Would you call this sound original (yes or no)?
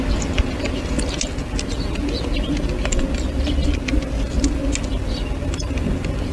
yes